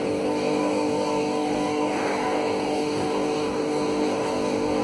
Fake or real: fake